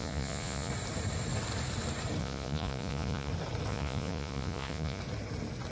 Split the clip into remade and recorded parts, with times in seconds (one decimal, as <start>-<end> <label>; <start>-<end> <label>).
0.0-0.7 remade; 0.7-2.2 recorded; 2.2-3.3 remade; 3.3-3.7 recorded; 3.7-5.0 remade; 5.0-5.7 recorded